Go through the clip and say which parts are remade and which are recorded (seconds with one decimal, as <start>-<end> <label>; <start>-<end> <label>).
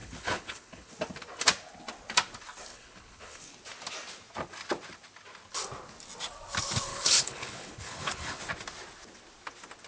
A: 0.0-0.9 remade; 0.9-2.7 recorded; 2.7-3.4 remade; 3.4-6.9 recorded; 6.9-8.4 remade; 8.4-9.9 recorded